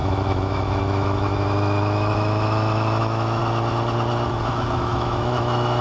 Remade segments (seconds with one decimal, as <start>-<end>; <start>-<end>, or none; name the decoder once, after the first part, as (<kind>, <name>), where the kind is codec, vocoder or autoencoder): 0.0-3.4 (autoencoder, DAC-VAE); 4.3-5.8